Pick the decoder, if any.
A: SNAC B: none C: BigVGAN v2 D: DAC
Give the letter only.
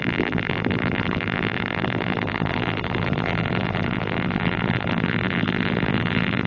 C